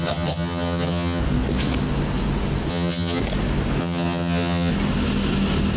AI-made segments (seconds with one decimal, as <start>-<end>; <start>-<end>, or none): 0.0-1.2; 2.7-3.2; 3.8-4.7